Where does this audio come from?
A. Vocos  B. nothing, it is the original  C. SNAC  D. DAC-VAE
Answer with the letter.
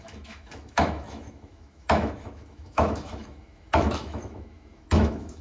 D